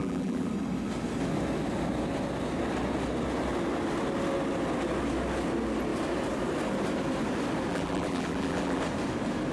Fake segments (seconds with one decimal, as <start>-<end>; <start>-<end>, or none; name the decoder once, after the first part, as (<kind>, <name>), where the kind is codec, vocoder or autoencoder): 0.0-0.5 (vocoder, BigVGAN v2); 7.7-8.8